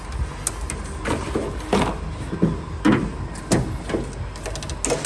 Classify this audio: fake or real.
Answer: real